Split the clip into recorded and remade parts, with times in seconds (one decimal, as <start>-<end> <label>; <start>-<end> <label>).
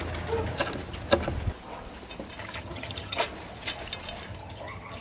0.0-2.4 recorded; 2.4-3.2 remade; 3.2-4.3 recorded; 4.3-5.0 remade